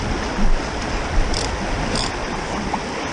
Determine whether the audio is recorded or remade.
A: recorded